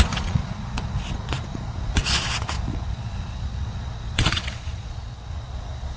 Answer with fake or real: fake